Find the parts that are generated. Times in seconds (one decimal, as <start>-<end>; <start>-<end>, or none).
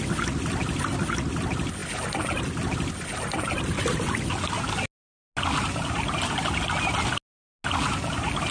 none